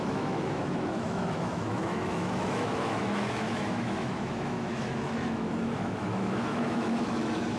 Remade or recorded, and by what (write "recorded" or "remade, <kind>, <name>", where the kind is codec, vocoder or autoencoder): remade, autoencoder, DAC-VAE